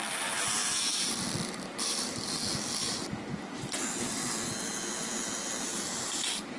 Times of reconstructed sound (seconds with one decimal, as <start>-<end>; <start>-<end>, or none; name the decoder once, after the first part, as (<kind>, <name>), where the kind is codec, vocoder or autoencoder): none